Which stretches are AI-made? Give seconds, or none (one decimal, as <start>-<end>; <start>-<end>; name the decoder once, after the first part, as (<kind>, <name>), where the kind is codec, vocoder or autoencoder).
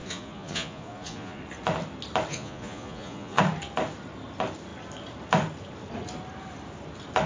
0.0-1.4 (vocoder, Vocos); 2.3-3.4